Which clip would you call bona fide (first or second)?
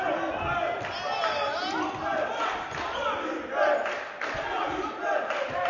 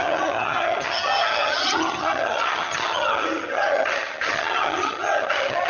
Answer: first